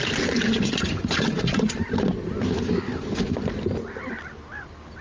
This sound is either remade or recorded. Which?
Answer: recorded